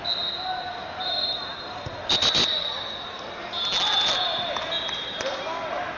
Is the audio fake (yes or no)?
no